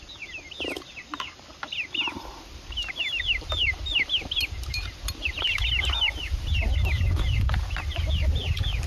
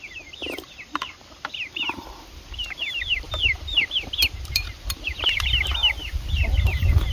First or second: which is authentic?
first